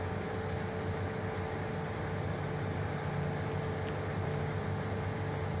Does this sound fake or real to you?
real